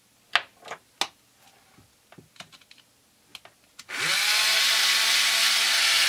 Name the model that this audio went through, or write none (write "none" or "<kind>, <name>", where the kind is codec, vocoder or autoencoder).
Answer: none